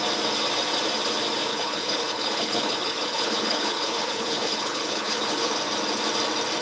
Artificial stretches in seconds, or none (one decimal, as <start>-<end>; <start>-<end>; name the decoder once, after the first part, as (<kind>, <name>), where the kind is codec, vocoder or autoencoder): 1.5-5.5 (codec, HILCodec)